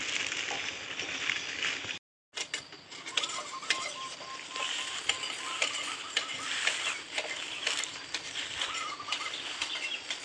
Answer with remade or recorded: recorded